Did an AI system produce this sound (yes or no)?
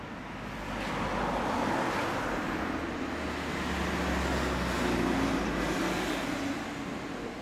no